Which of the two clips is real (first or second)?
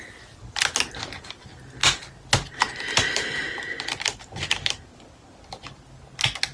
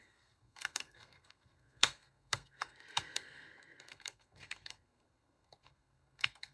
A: first